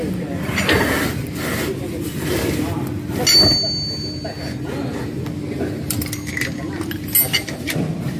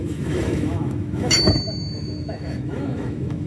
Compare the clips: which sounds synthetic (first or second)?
second